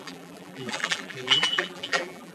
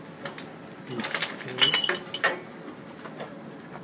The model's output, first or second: first